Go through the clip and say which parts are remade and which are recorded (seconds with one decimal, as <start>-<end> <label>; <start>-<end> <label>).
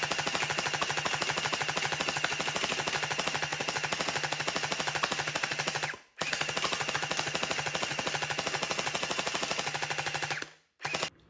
0.0-11.3 recorded